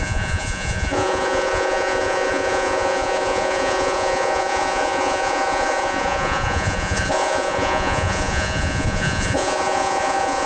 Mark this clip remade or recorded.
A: remade